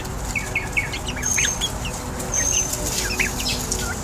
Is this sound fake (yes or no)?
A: no